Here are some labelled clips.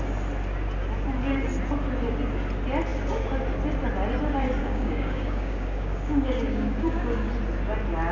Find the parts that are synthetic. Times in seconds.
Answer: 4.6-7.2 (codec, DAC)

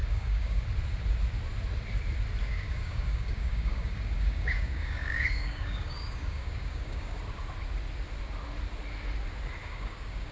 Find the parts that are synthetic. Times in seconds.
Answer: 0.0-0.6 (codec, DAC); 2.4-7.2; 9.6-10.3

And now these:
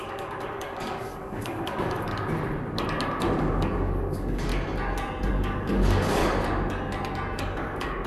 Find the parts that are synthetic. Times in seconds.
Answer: 0.0-2.1 (codec, DAC); 3.4-4.5; 5.3-6.2; 7.4-8.1

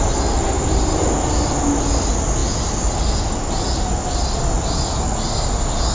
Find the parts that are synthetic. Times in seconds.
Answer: none

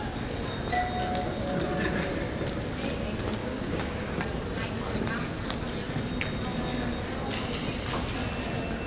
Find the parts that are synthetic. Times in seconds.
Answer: 3.4-4.2 (codec, DAC)